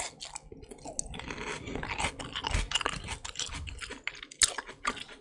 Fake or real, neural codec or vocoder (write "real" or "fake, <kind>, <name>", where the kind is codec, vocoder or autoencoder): real